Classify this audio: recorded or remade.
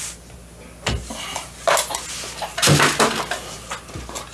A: recorded